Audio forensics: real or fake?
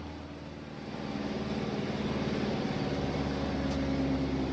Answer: real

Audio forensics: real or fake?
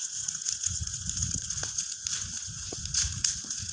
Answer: fake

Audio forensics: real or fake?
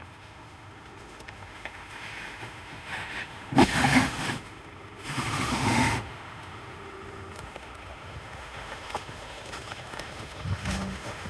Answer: fake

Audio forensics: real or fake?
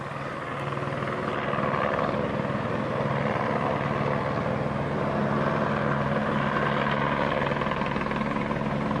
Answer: real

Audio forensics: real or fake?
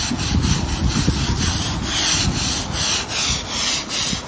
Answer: real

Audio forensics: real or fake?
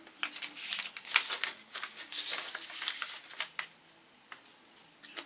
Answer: real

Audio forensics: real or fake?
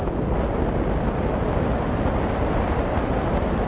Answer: real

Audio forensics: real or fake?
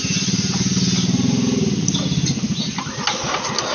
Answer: real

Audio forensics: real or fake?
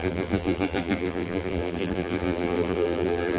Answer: fake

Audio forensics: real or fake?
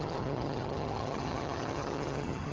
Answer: fake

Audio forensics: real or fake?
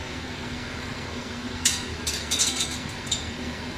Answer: fake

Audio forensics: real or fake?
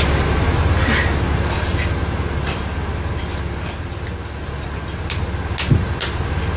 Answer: real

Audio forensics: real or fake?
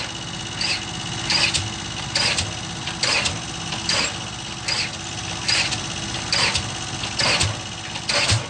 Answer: real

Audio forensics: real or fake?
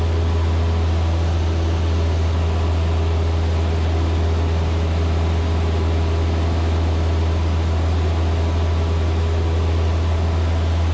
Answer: real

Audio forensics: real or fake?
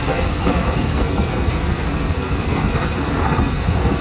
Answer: fake